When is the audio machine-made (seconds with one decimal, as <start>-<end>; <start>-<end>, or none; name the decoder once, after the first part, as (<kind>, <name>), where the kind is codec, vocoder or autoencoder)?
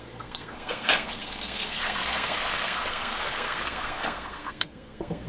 0.0-5.3 (codec, SNAC)